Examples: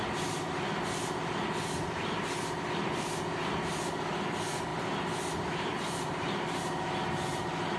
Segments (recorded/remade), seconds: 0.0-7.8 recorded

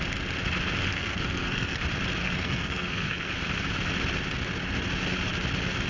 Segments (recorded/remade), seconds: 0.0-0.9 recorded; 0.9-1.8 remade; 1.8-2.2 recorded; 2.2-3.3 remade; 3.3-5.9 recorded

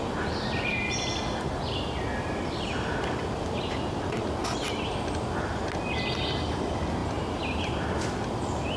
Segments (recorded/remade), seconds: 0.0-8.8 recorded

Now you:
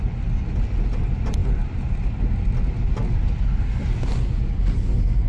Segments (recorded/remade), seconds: 0.0-5.3 recorded

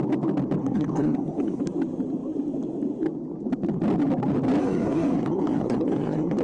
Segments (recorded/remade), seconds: 0.0-0.6 recorded; 0.6-1.6 remade; 1.6-4.6 recorded; 4.6-6.4 remade

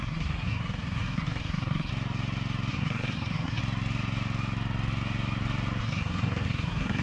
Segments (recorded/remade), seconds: 0.0-1.9 remade; 1.9-2.7 recorded; 2.7-3.6 remade; 3.6-5.8 recorded; 5.8-7.0 remade